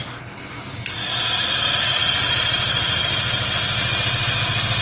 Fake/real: real